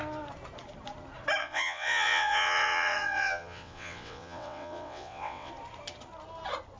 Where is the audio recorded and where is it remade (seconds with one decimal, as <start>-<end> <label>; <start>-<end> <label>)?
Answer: 0.0-1.4 recorded; 1.4-5.5 remade; 5.5-6.8 recorded